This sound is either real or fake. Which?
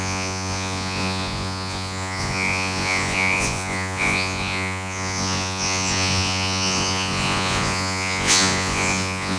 fake